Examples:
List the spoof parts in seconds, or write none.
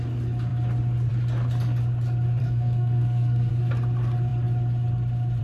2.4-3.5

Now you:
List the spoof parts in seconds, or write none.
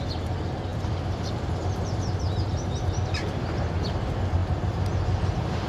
none